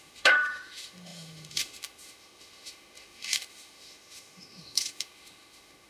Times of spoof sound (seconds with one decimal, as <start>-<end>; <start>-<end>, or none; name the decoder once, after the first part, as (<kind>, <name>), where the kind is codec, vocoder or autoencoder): 0.0-5.9 (autoencoder, DAC-VAE)